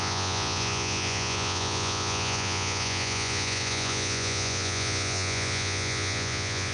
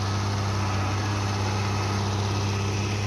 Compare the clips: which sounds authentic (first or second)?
second